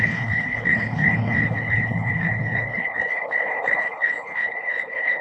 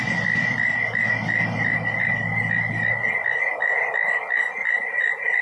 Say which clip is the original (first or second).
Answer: second